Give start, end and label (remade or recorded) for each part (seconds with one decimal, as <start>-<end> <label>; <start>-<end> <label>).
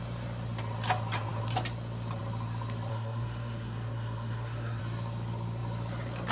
0.0-2.9 recorded; 2.9-4.8 remade; 4.8-6.3 recorded